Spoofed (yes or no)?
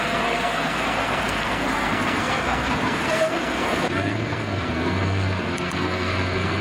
yes